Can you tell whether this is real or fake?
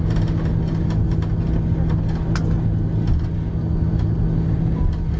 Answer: real